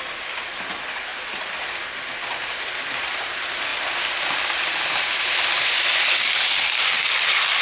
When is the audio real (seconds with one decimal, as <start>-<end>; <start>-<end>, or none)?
0.0-1.1; 1.7-7.6